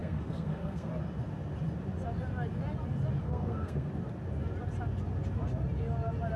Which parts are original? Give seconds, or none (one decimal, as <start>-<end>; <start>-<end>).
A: 0.9-3.2; 3.9-6.4